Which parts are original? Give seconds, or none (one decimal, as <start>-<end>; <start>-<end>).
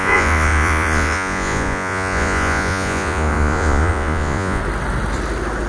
4.6-5.7